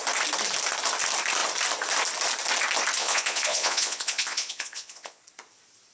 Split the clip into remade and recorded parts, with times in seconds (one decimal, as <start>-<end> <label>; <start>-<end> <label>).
0.0-3.0 recorded; 3.0-5.2 remade; 5.2-5.9 recorded